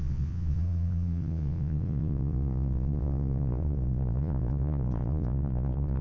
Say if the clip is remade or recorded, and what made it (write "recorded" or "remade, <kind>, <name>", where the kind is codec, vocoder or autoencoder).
remade, vocoder, Vocos